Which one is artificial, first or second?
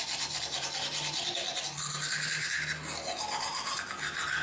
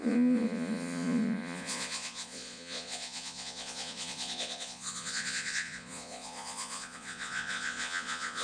second